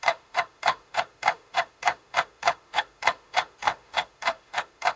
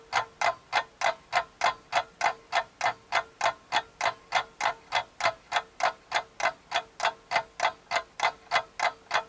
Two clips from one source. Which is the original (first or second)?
second